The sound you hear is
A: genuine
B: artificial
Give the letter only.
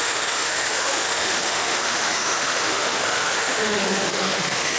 B